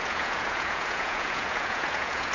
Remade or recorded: remade